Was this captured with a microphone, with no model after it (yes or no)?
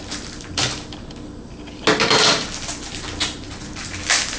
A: yes